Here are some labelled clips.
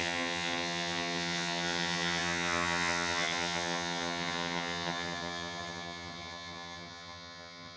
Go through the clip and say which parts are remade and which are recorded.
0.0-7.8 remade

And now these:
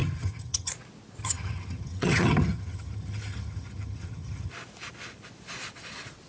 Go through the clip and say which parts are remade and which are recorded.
0.0-0.7 remade; 0.7-1.2 recorded; 1.2-4.5 remade; 4.5-6.3 recorded

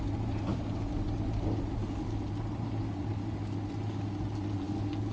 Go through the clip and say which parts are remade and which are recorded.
0.0-5.1 recorded

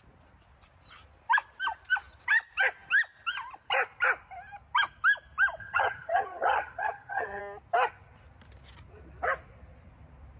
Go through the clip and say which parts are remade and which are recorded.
0.0-5.6 recorded; 5.6-7.4 remade; 7.4-10.4 recorded

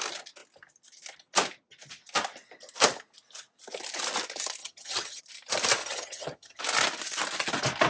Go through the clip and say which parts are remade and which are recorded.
0.0-4.6 recorded; 4.6-5.2 remade; 5.2-5.8 recorded; 5.8-6.6 remade; 6.6-7.9 recorded